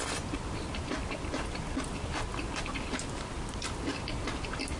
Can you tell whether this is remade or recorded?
remade